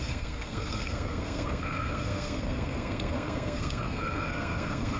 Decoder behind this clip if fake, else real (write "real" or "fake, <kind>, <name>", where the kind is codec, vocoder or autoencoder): fake, codec, SNAC